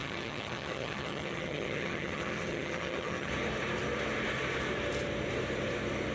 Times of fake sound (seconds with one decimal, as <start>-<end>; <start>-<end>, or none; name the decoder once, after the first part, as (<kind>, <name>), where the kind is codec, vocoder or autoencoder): 0.0-3.3 (vocoder, HiFi-GAN)